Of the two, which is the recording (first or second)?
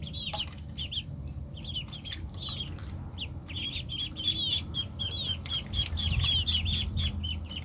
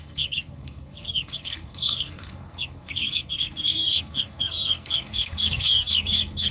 first